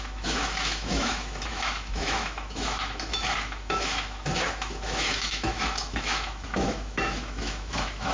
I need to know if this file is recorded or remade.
remade